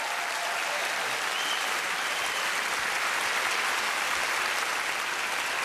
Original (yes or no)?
yes